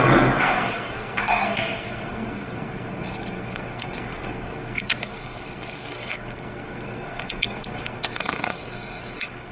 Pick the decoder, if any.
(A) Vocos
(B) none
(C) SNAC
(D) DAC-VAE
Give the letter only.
C